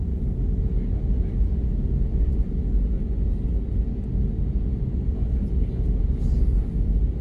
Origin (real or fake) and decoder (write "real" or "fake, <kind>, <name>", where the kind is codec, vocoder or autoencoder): real